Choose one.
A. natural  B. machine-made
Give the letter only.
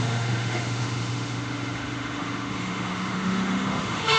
B